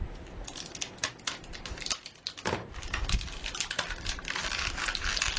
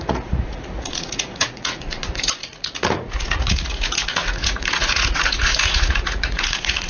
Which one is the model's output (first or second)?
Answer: second